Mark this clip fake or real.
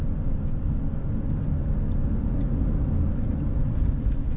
real